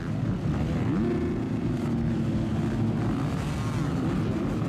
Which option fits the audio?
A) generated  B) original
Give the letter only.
B